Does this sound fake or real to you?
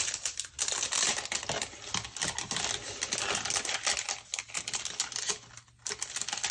real